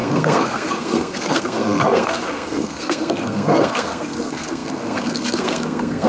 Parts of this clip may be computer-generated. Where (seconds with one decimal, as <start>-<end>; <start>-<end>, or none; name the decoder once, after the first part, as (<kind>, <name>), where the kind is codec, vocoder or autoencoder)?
0.0-6.1 (codec, SNAC)